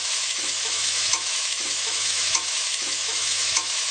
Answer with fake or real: fake